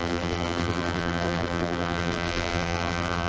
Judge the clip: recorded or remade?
remade